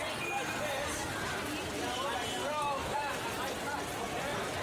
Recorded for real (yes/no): yes